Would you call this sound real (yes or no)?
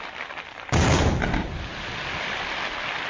yes